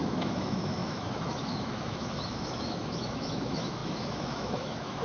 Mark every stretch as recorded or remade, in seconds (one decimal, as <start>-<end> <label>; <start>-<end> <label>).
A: 0.0-5.0 remade